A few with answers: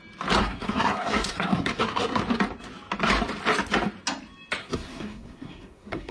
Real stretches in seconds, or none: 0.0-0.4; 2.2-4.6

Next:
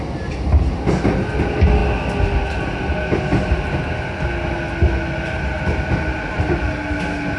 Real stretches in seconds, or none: 0.0-7.4